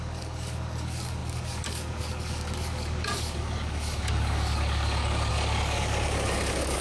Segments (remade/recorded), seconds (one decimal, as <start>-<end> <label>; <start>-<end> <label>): 0.0-6.8 remade

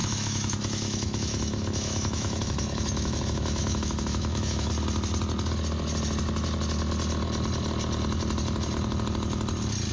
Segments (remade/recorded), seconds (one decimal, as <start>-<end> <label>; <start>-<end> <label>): 0.0-4.7 remade; 4.7-9.9 recorded

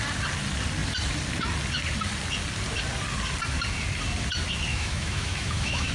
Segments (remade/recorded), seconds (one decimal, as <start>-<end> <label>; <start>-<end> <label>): 0.0-4.7 recorded; 4.7-5.9 remade

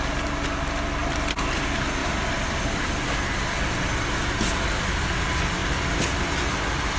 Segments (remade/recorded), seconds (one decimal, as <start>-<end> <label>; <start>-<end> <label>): 0.0-1.0 recorded; 1.0-1.6 remade; 1.6-2.0 recorded; 2.0-3.1 remade; 3.1-7.0 recorded

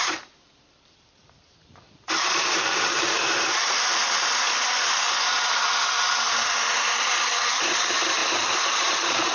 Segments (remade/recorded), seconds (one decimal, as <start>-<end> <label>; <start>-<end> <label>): 0.0-3.9 remade; 3.9-6.3 recorded; 6.3-9.3 remade

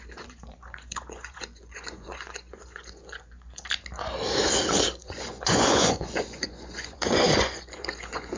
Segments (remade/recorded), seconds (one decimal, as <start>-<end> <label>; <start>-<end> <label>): 0.0-3.6 remade; 3.6-5.0 recorded; 5.0-8.4 remade

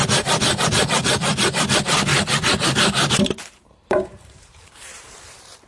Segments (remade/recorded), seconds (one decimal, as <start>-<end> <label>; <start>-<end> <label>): 0.0-2.1 recorded; 2.1-5.7 remade

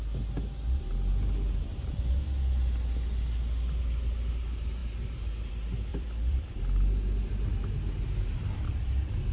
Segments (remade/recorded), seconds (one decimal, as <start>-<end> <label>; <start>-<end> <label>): 0.0-5.9 recorded; 5.9-7.3 remade; 7.3-9.3 recorded